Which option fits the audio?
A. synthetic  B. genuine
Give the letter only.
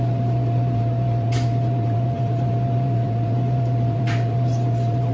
A